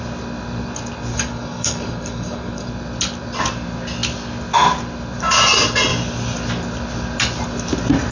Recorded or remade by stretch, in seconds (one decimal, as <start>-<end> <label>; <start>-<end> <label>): 0.0-1.1 recorded; 1.1-2.7 remade; 2.7-8.1 recorded